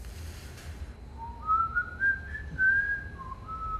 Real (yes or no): yes